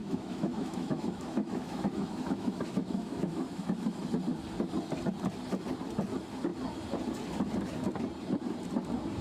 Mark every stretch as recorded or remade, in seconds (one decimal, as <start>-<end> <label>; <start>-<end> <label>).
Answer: 0.0-4.1 remade; 4.1-9.2 recorded